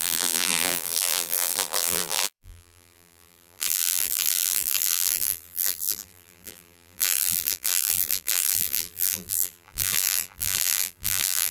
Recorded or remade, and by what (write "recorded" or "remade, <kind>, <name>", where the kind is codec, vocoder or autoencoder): remade, vocoder, BigVGAN v2